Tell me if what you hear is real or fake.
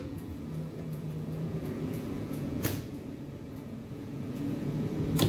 fake